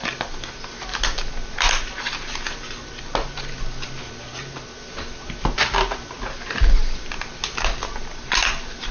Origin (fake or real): real